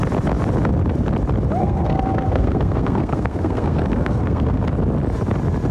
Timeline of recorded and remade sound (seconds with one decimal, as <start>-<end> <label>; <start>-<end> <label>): 0.0-1.6 recorded; 1.6-4.6 remade; 4.6-5.7 recorded